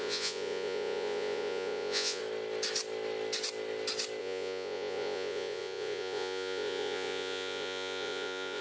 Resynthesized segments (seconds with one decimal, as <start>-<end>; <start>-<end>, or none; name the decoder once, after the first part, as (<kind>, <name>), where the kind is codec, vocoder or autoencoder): 0.0-2.2 (vocoder, Vocos); 4.2-8.6